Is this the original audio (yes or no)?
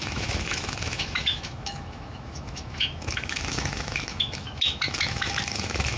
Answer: no